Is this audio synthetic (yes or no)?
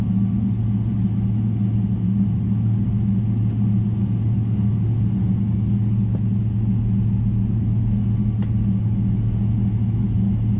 no